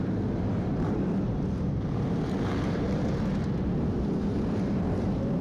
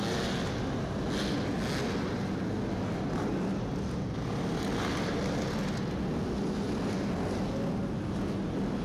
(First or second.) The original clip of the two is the second